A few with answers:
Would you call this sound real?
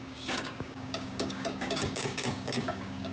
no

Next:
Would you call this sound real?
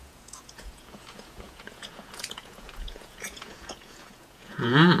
no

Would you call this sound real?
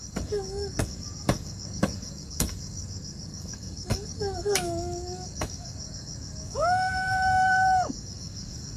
no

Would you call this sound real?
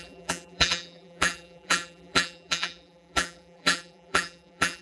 no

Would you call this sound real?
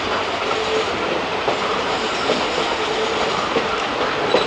yes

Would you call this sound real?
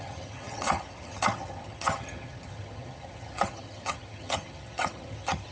no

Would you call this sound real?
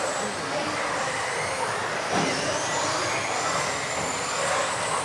yes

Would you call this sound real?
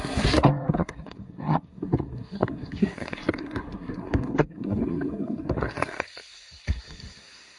no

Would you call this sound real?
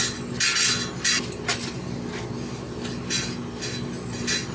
yes